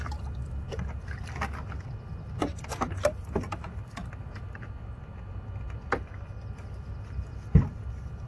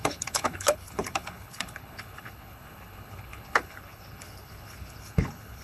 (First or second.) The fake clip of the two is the second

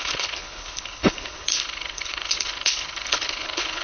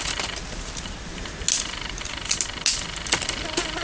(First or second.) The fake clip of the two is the first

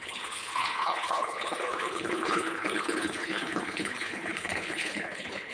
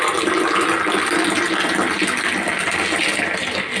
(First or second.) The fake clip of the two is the first